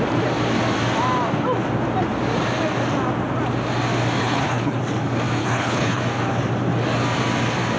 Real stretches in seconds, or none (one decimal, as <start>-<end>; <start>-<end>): 0.0-4.2; 4.8-5.4; 6.0-7.8